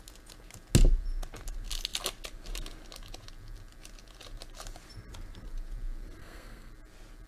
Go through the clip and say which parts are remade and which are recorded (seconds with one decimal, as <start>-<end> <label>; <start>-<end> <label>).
0.0-6.2 recorded; 6.2-6.7 remade; 6.7-7.3 recorded